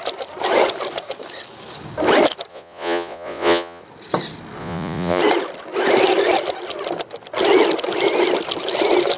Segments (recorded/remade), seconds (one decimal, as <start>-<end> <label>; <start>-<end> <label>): 0.0-2.5 recorded; 2.5-3.8 remade; 3.8-4.6 recorded; 4.6-5.2 remade; 5.2-9.2 recorded